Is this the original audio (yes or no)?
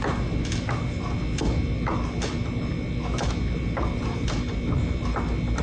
yes